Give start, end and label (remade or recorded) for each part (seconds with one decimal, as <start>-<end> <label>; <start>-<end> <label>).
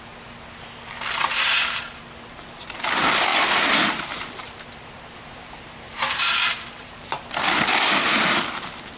0.0-3.3 recorded; 3.3-7.3 remade; 7.3-9.0 recorded